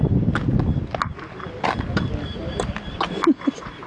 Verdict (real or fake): real